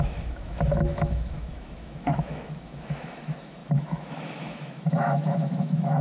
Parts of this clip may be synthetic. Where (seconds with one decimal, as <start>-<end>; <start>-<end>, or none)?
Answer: 0.0-6.0